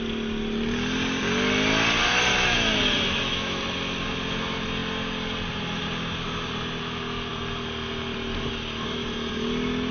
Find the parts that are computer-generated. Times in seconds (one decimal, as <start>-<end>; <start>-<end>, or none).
2.3-3.6